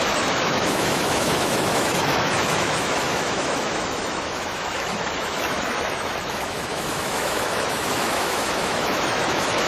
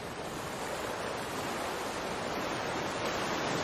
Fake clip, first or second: first